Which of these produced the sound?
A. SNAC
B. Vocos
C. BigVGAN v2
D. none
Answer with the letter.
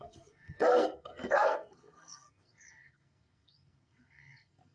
A